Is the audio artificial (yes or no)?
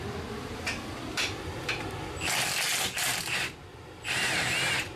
no